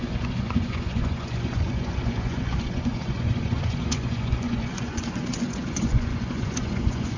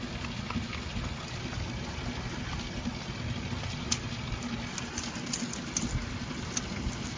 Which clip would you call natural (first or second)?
second